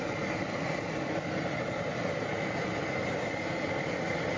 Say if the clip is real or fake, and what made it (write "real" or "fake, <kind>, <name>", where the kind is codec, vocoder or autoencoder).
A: real